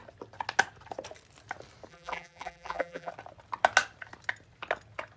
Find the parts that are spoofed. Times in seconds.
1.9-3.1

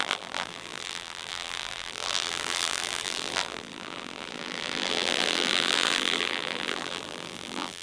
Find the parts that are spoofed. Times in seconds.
0.0-7.8

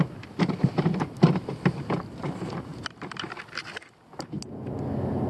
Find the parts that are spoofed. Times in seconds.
none

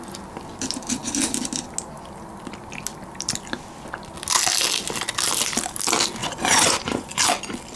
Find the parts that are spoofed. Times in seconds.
6.2-7.2

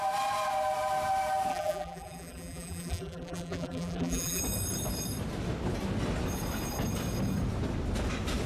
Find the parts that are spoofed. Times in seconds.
1.5-4.4

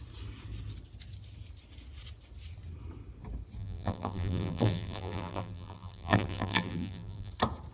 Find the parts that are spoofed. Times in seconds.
3.6-7.3

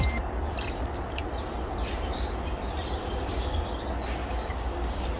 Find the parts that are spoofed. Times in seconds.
3.0-3.7; 4.2-5.2